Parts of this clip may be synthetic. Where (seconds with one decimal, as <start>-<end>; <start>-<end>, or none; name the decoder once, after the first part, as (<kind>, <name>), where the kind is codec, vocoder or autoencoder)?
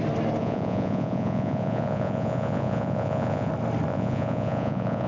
0.4-3.5 (vocoder, Vocos); 3.9-5.1